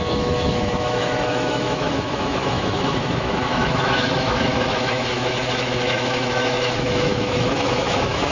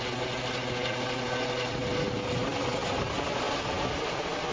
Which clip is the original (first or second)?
second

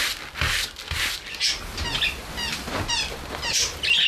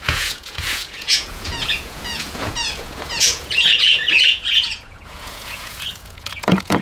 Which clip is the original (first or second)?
first